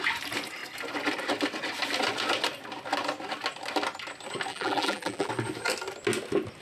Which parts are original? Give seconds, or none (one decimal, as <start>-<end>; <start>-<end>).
0.0-4.5; 5.3-6.6